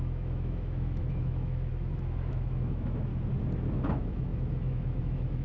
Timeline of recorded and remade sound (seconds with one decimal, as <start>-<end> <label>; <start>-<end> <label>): 0.0-3.1 remade; 3.1-3.7 recorded; 3.7-5.4 remade